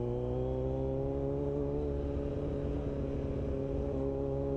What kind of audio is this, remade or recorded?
recorded